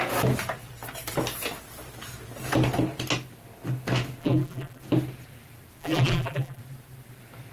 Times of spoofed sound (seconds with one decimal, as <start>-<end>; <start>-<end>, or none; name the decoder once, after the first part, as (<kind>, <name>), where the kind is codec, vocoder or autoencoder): 4.2-4.8 (vocoder, BigVGAN v2); 5.8-6.6

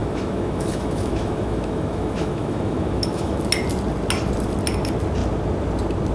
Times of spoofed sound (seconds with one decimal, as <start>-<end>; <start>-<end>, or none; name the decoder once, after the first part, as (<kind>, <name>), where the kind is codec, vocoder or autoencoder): 0.0-3.4 (autoencoder, DAC-VAE)

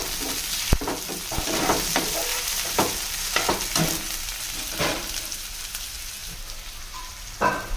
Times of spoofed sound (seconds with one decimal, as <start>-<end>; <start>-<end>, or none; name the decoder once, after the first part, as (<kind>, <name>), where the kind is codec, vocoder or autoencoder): 2.3-3.3 (vocoder, BigVGAN v2)

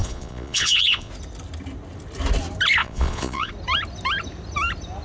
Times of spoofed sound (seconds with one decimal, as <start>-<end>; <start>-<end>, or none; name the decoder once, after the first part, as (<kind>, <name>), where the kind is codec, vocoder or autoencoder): 0.0-1.1 (vocoder, Vocos); 2.8-3.5

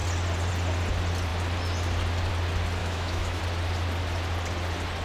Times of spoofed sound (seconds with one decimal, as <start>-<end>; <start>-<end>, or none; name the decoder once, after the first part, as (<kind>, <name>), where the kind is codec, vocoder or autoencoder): 2.8-3.4 (autoencoder, DAC-VAE)